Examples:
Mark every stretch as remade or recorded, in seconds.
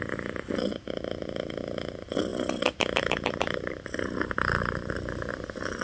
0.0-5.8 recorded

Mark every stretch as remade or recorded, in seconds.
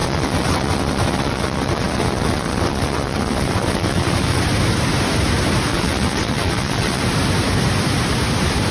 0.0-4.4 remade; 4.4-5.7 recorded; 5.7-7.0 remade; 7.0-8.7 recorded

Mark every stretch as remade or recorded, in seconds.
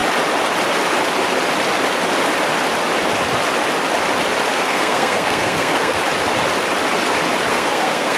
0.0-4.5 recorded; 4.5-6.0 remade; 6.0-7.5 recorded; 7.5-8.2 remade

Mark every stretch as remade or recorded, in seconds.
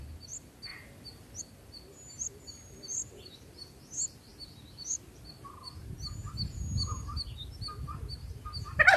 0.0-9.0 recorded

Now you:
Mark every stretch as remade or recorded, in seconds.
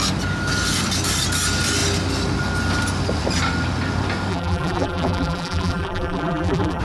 0.0-4.3 recorded; 4.3-6.8 remade